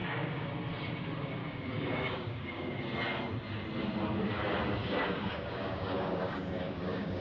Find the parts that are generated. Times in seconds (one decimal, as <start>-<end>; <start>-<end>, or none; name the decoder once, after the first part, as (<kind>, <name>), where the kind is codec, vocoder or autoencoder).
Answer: 0.0-0.5 (codec, DAC); 1.4-2.8; 4.8-7.2